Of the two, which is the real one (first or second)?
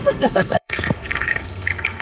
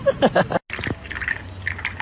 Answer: second